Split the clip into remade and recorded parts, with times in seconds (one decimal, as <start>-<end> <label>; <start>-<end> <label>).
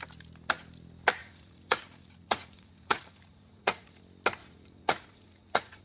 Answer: 0.0-1.2 recorded; 1.2-4.0 remade; 4.0-4.4 recorded; 4.4-5.8 remade